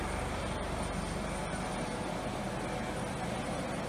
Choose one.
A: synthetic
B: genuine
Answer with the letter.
B